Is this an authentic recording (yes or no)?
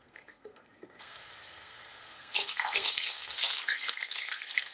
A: no